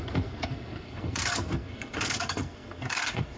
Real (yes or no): no